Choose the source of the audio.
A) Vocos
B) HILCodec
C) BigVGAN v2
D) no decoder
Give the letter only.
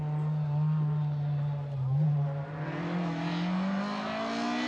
D